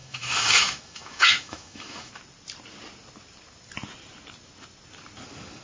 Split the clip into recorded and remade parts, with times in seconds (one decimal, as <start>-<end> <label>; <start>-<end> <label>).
0.0-2.1 remade; 2.1-5.6 recorded

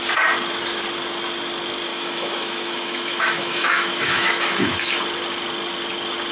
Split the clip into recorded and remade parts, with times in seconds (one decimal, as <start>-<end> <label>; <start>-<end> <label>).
0.0-1.9 recorded; 1.9-5.0 remade; 5.0-6.3 recorded

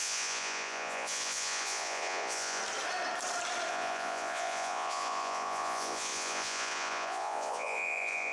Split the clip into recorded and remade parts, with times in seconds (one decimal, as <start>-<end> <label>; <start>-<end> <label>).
0.0-2.6 remade; 2.6-3.7 recorded; 3.7-8.3 remade

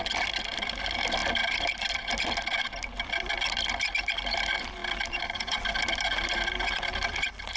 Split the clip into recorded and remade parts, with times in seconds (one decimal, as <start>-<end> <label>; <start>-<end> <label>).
0.0-7.6 recorded

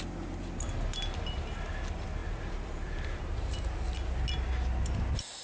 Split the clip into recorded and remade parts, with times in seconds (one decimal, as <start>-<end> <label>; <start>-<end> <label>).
0.0-2.2 recorded; 2.2-3.7 remade; 3.7-5.4 recorded